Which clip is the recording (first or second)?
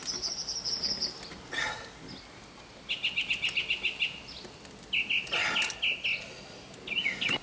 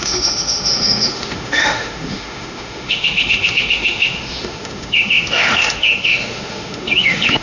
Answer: first